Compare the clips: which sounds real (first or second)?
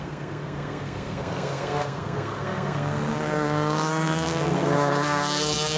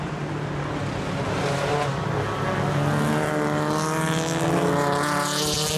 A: second